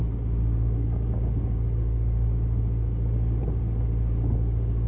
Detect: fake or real fake